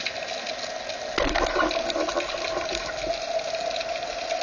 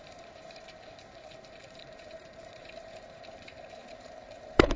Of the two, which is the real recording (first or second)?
first